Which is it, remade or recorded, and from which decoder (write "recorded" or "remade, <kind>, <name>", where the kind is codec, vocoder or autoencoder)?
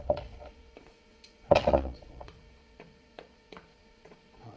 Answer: remade, vocoder, Vocos